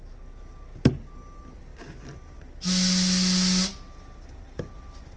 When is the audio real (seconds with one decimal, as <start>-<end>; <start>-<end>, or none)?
0.0-5.2

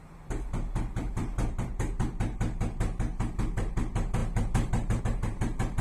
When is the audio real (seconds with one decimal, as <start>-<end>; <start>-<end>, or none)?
none

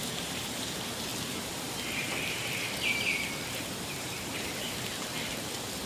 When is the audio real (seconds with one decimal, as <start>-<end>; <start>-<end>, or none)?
none

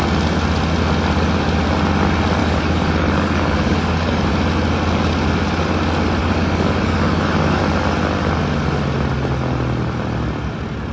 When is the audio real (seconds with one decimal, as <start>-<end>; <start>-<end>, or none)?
0.0-2.4; 4.3-6.2; 7.6-10.9

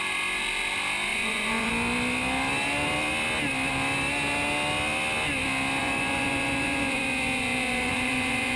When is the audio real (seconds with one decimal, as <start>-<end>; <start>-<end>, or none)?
0.0-1.1; 1.7-5.8

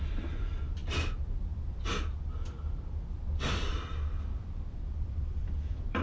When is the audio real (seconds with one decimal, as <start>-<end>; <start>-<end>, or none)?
0.8-4.4

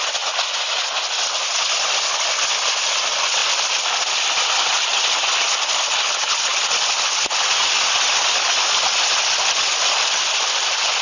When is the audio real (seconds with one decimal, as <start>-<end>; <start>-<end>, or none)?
0.0-3.4; 5.4-6.5; 7.5-11.0

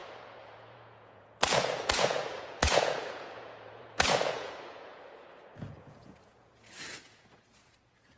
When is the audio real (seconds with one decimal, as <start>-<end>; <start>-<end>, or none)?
none